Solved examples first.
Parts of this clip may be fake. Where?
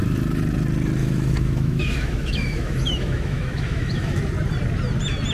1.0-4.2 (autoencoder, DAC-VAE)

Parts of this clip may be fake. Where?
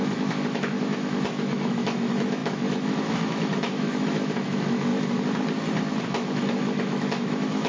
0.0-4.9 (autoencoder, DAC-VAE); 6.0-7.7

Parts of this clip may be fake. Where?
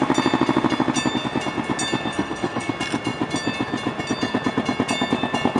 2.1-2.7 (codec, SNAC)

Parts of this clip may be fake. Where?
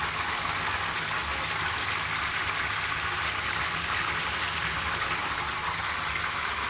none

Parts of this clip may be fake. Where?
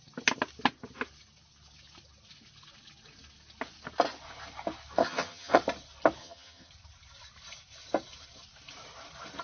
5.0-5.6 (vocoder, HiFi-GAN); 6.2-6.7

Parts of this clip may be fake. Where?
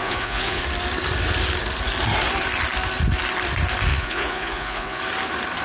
0.0-0.6 (vocoder, Vocos); 3.9-5.0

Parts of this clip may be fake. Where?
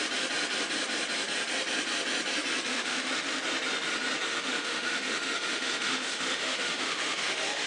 2.7-3.4 (autoencoder, DAC-VAE); 4.3-7.7